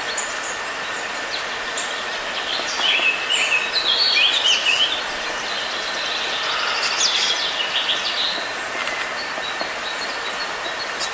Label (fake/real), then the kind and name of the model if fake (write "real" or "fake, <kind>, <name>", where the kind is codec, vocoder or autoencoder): real